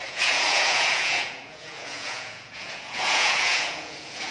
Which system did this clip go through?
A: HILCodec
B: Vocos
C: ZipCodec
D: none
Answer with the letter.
B